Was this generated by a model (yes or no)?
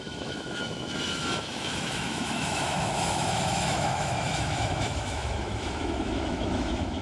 yes